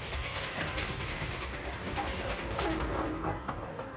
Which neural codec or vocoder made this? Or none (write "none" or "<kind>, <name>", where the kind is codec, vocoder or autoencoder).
codec, DAC